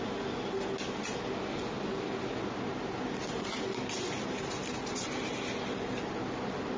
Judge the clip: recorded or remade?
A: recorded